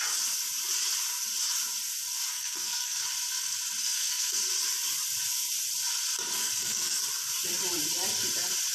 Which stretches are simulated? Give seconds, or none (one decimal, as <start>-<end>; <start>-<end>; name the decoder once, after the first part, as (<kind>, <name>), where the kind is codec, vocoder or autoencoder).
2.3-3.0 (codec, SNAC); 3.8-4.4; 6.4-7.0